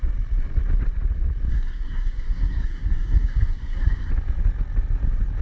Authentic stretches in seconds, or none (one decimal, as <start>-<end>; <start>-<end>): 0.0-1.5; 4.1-5.4